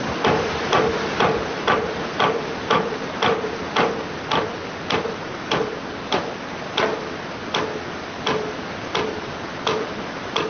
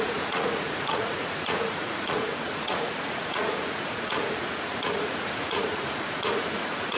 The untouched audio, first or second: first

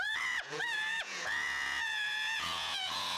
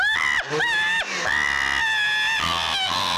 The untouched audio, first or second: second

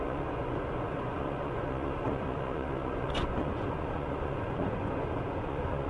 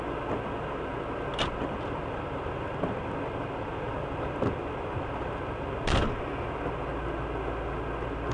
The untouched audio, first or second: second